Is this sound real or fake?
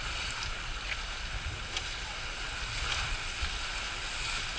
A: real